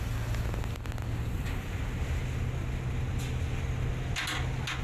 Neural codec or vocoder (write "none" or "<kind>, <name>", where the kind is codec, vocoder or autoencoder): none